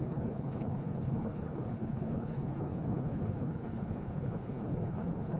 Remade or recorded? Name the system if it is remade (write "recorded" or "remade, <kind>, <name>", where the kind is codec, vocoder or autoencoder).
remade, codec, HILCodec